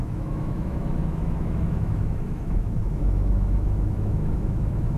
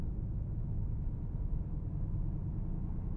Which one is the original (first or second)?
second